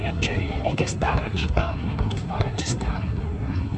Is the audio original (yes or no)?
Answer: no